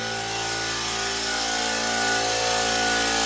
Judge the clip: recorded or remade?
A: recorded